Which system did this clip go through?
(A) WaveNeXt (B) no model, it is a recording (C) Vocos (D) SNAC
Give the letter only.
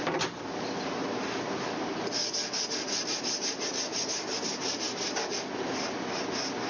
B